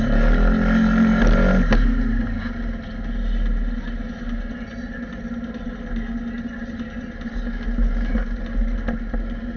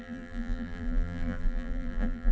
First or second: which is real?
first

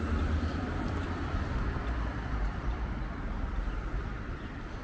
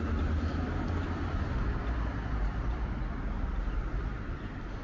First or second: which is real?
second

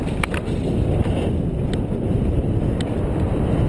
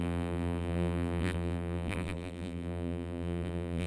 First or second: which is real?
first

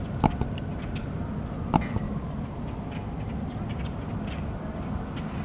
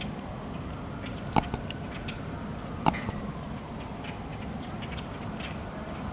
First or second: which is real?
first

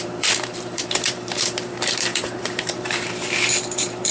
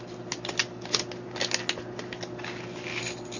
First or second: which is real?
second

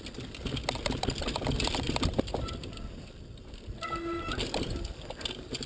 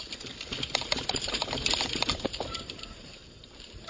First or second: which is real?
first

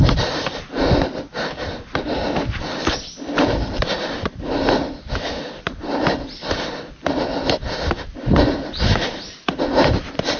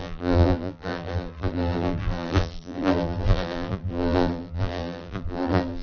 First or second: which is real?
first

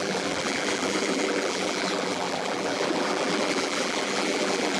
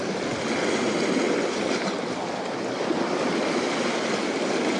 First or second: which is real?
second